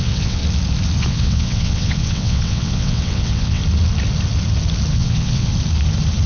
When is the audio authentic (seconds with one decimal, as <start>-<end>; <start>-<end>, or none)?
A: 0.4-1.0; 3.6-4.9; 5.5-6.3